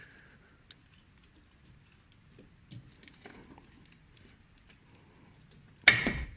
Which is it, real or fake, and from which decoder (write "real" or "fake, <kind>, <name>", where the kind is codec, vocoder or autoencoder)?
real